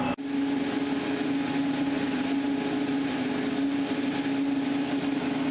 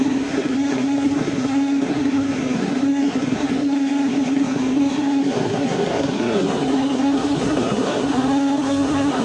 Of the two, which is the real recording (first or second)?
first